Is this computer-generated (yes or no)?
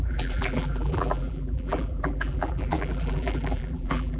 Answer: yes